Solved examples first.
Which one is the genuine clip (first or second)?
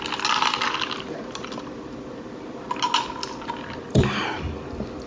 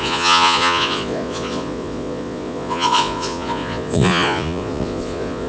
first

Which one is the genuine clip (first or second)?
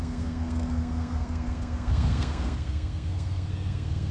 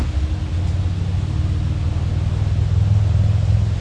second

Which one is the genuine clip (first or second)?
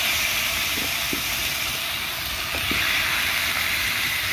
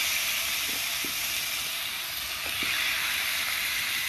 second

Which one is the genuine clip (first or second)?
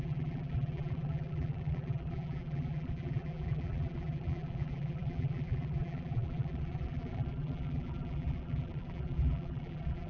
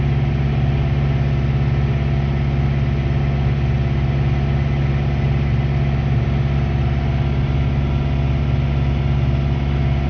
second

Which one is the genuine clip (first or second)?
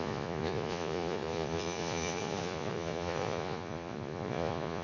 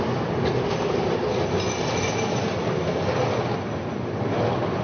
second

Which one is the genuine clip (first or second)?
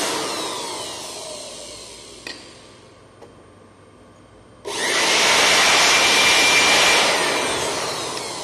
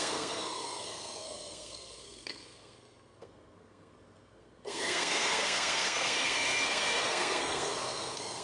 first